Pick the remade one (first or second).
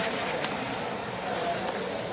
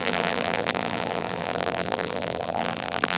second